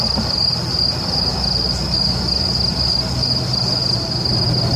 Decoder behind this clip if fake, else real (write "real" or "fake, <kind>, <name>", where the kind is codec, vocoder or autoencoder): real